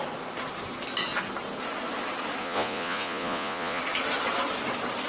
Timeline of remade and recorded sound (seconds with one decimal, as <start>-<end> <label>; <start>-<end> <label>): 0.0-2.4 recorded; 2.4-3.8 remade; 3.8-5.1 recorded